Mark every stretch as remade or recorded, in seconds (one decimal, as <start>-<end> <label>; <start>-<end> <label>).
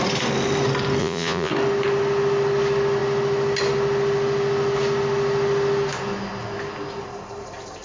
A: 0.0-1.0 recorded; 1.0-1.5 remade; 1.5-7.8 recorded